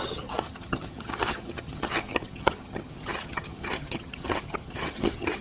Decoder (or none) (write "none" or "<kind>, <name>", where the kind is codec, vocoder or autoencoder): vocoder, HiFi-GAN